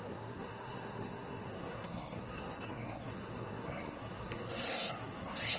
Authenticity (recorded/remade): remade